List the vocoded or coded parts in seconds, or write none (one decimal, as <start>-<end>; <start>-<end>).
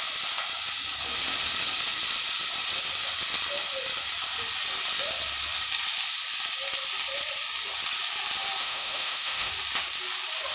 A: 8.6-9.5